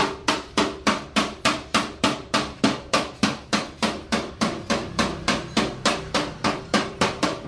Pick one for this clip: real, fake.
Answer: fake